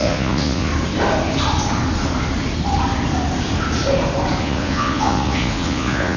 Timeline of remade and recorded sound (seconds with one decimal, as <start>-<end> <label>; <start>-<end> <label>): 0.0-0.7 remade; 0.7-4.4 recorded; 4.4-6.2 remade